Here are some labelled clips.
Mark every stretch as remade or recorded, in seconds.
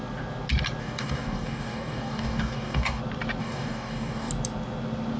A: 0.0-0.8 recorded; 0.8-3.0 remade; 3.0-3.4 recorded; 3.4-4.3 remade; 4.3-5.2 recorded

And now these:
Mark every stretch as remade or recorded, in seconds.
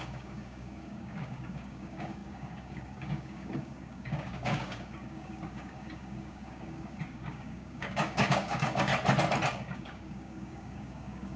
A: 0.0-8.9 remade; 8.9-9.5 recorded; 9.5-11.4 remade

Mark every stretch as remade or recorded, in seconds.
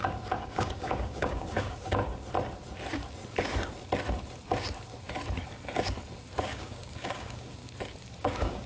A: 0.0-2.0 remade; 2.0-6.4 recorded; 6.4-7.6 remade; 7.6-8.2 recorded; 8.2-8.7 remade